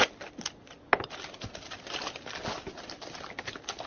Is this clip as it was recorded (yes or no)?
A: yes